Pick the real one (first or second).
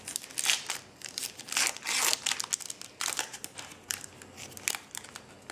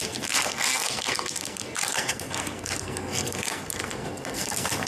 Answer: first